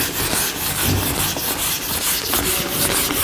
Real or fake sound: real